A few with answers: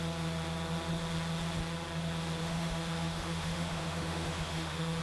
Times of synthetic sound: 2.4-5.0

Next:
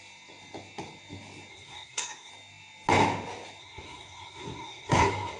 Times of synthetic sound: 1.5-2.3; 3.6-5.4

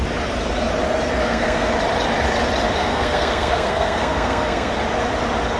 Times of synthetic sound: 1.2-1.7; 2.8-4.7

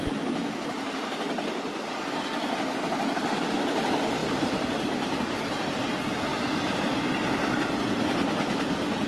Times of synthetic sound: 4.2-5.2; 6.3-7.6

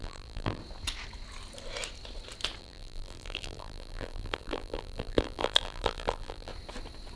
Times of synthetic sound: 0.0-0.6; 2.6-6.5

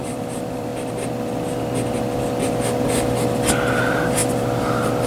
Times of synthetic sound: 0.0-0.7; 3.8-4.2